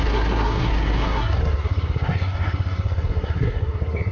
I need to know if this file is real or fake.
fake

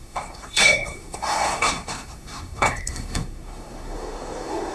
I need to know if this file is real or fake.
fake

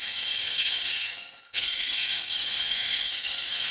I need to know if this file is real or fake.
fake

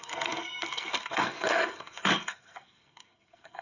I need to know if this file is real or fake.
fake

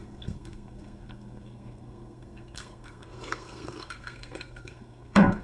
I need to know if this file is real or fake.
fake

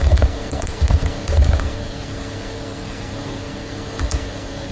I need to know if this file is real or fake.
fake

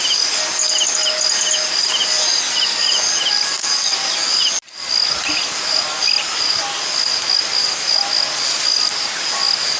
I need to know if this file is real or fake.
real